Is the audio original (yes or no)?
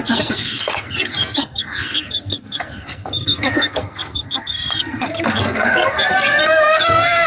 no